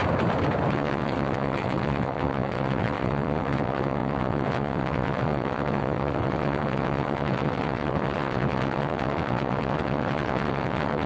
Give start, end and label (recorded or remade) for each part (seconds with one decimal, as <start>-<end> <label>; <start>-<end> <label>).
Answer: 0.0-0.7 recorded; 0.7-11.1 remade